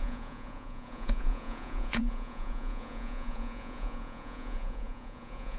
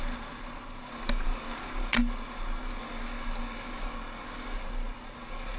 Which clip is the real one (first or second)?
second